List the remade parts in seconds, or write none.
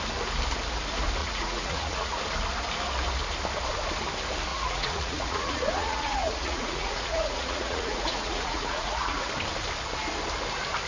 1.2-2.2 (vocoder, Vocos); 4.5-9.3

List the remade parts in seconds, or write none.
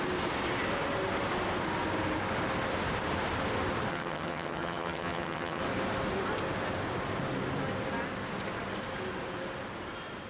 3.9-5.6 (vocoder, HiFi-GAN)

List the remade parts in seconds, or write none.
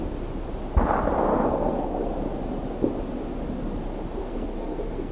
1.3-2.1 (codec, SNAC); 4.2-5.1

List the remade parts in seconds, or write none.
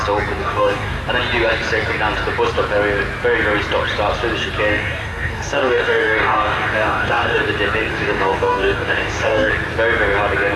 0.4-1.0 (codec, DAC); 4.7-7.4; 7.9-9.5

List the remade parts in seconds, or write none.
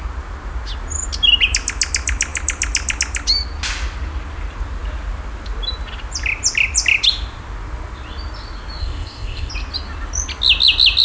8.8-9.5 (codec, ZipCodec)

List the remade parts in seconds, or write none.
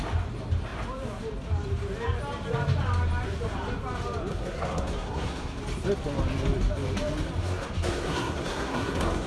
4.3-5.6 (codec, SNAC); 7.4-9.3